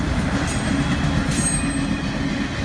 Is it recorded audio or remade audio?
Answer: recorded